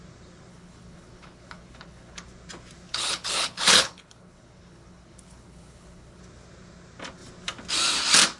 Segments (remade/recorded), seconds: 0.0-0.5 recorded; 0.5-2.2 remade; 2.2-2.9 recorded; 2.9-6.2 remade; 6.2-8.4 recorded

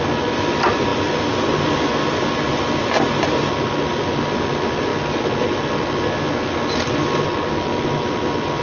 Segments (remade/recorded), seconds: 0.0-8.6 recorded

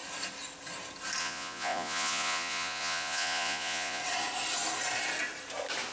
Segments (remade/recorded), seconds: 0.0-1.2 recorded; 1.2-4.0 remade; 4.0-5.9 recorded

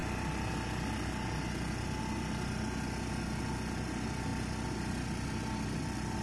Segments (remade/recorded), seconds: 0.0-4.3 recorded; 4.3-4.9 remade; 4.9-6.2 recorded

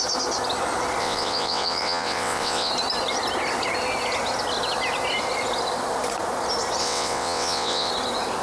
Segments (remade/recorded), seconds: 0.0-1.0 recorded; 1.0-2.7 remade; 2.7-6.8 recorded; 6.8-7.9 remade; 7.9-8.4 recorded

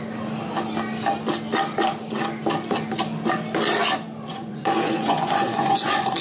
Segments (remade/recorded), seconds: 0.0-4.3 recorded; 4.3-6.2 remade